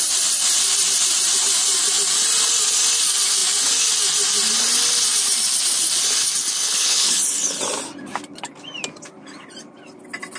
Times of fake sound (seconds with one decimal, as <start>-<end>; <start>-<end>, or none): 6.4-7.6